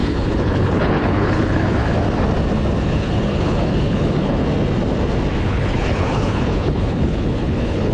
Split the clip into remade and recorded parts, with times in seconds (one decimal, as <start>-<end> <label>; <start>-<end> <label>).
0.0-1.8 remade; 1.8-2.8 recorded; 2.8-4.4 remade; 4.4-5.4 recorded; 5.4-7.9 remade